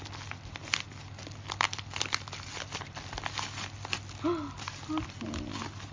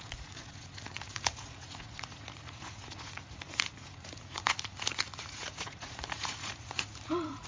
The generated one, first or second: second